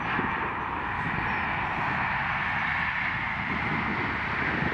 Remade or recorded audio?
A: recorded